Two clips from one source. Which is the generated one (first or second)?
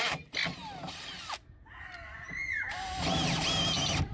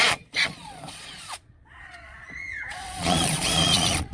second